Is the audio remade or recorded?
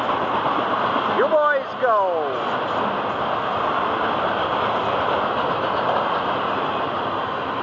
recorded